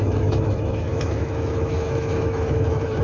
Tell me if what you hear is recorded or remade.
remade